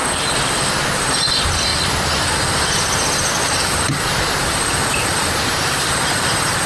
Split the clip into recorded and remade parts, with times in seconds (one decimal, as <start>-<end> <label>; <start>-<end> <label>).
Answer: 0.0-0.6 recorded; 0.6-1.7 remade; 1.7-3.3 recorded; 3.3-4.5 remade; 4.5-5.1 recorded; 5.1-6.7 remade